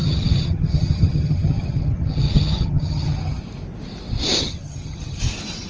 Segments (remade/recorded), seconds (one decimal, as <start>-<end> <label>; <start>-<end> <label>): 0.0-3.4 remade; 3.4-4.4 recorded; 4.4-5.2 remade; 5.2-5.7 recorded